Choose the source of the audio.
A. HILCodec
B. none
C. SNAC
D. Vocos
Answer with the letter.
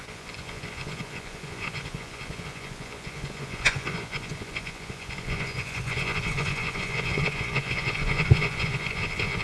D